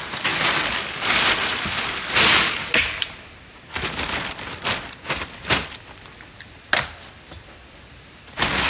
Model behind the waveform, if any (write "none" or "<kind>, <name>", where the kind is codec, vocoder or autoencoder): none